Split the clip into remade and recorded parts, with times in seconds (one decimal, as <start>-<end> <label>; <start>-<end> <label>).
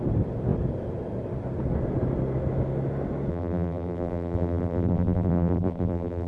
0.0-3.3 recorded; 3.3-6.3 remade